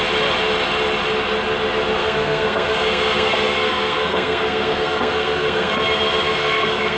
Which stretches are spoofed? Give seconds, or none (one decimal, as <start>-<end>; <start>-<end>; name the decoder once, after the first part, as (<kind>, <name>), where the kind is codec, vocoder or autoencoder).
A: 2.0-5.7 (codec, SNAC); 6.4-7.0